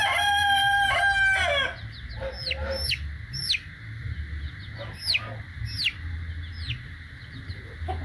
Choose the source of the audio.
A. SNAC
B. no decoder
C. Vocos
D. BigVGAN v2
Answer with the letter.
B